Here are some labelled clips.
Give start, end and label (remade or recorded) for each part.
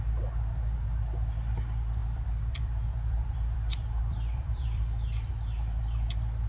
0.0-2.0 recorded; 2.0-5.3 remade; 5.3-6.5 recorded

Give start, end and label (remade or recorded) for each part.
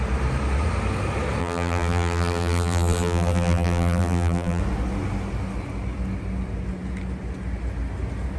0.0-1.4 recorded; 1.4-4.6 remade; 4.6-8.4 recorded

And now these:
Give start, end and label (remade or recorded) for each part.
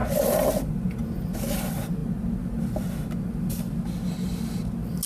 0.0-5.1 recorded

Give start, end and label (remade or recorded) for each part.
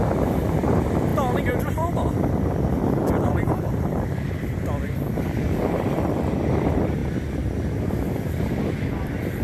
0.0-7.0 remade; 7.0-7.9 recorded; 7.9-9.4 remade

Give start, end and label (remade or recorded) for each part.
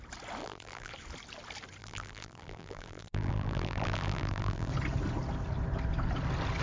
0.0-0.4 recorded; 0.4-0.9 remade; 0.9-1.8 recorded; 1.8-4.7 remade; 4.7-6.6 recorded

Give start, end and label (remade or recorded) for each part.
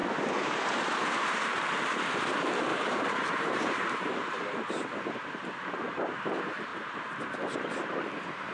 0.0-0.6 remade; 0.6-2.7 recorded; 2.7-6.1 remade; 6.1-6.7 recorded; 6.7-8.0 remade; 8.0-8.5 recorded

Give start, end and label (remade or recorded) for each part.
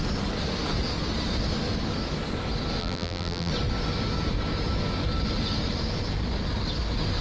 0.0-2.8 recorded; 2.8-3.5 remade; 3.5-7.2 recorded